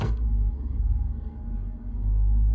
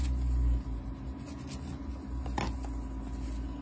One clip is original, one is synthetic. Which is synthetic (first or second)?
first